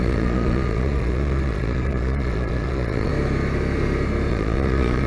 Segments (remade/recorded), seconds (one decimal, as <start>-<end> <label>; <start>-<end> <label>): 0.0-3.1 remade; 3.1-4.3 recorded; 4.3-5.1 remade